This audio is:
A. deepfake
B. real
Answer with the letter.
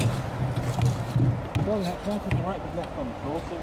B